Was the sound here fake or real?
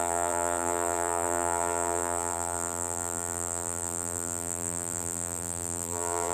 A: fake